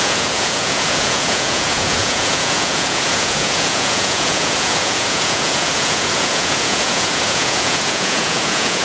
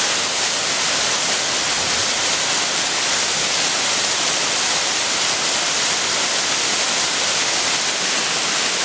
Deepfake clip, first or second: first